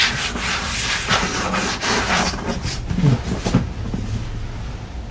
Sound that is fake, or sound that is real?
real